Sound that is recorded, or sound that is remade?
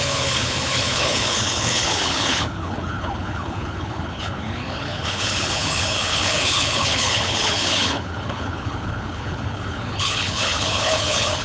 remade